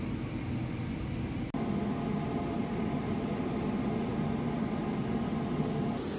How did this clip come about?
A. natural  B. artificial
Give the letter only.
A